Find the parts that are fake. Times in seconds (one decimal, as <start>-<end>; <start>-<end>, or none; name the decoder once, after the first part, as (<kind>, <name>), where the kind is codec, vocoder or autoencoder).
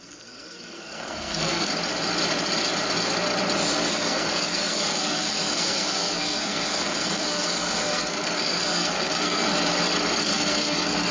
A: 0.0-1.7 (codec, SNAC); 3.9-9.5; 10.2-11.1